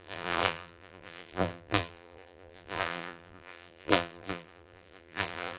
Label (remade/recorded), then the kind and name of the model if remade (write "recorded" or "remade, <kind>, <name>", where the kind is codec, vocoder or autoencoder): remade, vocoder, BigVGAN v2